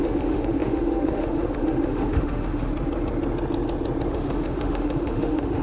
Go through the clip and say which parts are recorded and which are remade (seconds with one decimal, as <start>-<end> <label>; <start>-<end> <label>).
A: 0.0-2.7 remade; 2.7-4.1 recorded; 4.1-5.6 remade